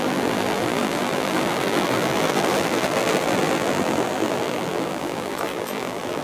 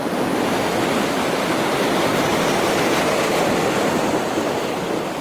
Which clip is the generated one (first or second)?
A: first